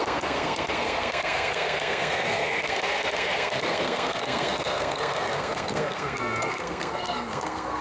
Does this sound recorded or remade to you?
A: remade